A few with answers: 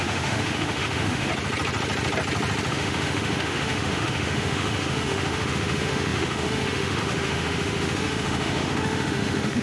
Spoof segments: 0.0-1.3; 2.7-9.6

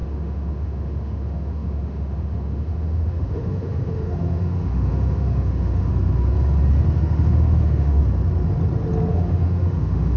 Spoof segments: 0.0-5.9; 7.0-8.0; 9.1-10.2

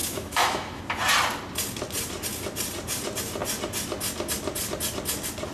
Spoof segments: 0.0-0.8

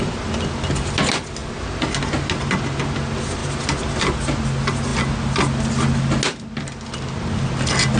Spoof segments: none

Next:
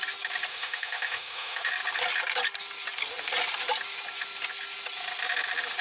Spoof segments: 0.5-1.7